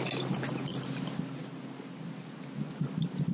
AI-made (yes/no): no